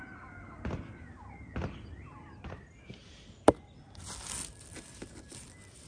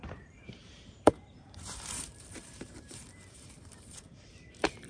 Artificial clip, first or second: second